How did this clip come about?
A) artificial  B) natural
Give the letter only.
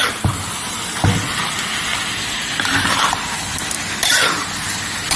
B